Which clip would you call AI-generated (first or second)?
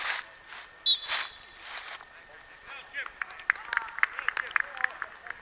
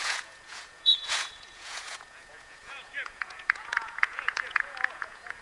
second